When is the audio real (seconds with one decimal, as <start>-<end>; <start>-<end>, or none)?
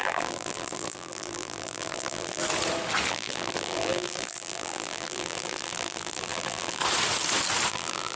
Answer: 2.4-3.1; 6.8-7.7